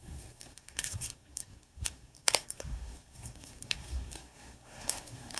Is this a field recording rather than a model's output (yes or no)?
no